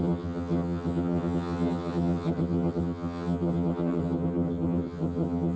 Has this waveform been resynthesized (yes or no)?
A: yes